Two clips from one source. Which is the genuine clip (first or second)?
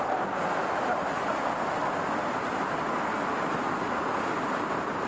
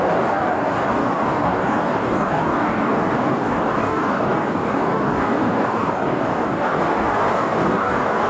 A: first